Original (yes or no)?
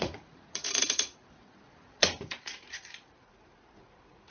no